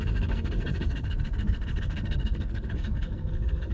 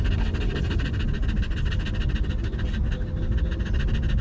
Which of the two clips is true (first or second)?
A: second